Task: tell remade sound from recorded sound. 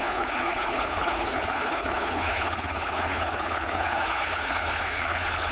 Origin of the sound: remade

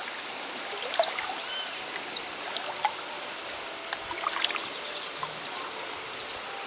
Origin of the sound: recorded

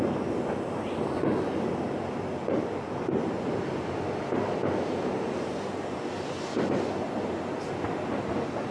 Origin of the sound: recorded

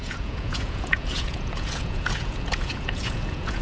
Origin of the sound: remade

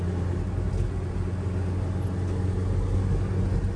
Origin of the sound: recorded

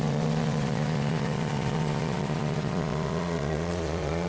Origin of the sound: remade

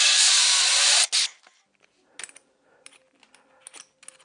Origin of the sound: recorded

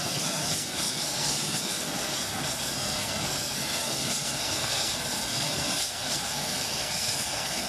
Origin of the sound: remade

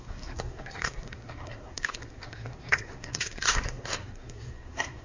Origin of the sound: remade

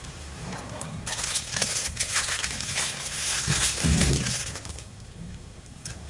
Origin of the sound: remade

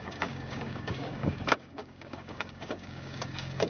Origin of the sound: remade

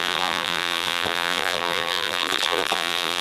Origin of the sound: remade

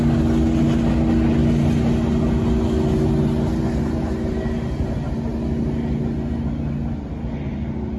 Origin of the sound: recorded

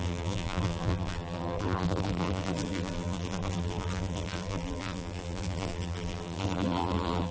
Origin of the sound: remade